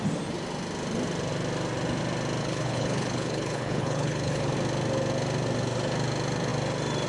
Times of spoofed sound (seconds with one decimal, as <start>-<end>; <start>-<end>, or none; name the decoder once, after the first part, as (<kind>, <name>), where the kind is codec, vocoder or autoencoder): 2.4-4.5 (codec, HILCodec)